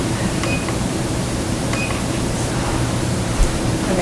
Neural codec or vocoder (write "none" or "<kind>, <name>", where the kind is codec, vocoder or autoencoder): vocoder, BigVGAN v2